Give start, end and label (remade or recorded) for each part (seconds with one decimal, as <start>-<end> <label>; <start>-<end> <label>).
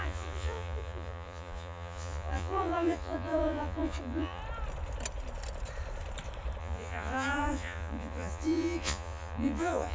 0.0-4.4 remade; 4.4-6.6 recorded; 6.6-9.9 remade